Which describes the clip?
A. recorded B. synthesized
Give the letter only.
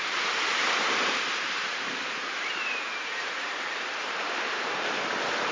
B